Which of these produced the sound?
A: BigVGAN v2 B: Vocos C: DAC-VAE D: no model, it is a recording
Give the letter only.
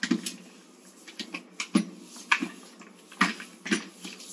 D